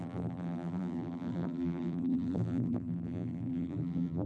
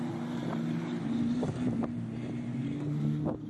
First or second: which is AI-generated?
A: first